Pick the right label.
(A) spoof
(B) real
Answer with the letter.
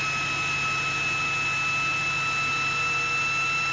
B